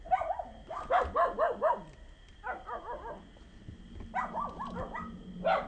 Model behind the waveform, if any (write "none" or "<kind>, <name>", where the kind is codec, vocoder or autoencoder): none